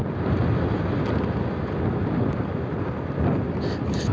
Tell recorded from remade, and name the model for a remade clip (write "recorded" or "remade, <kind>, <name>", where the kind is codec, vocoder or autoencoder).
recorded